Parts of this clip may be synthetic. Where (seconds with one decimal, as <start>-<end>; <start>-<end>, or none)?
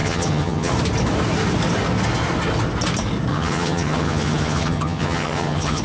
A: 0.0-0.7; 3.3-5.8